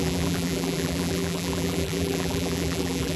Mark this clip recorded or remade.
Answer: remade